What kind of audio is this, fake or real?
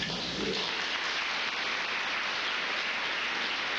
real